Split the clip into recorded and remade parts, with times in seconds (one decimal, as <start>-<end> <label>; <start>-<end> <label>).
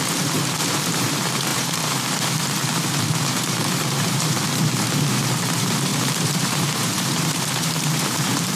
0.0-8.6 remade